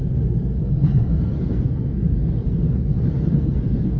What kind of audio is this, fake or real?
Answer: fake